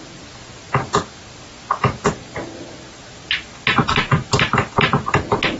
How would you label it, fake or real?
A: real